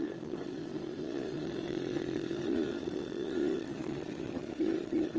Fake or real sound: fake